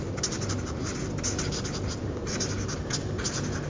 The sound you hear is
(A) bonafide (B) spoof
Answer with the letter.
A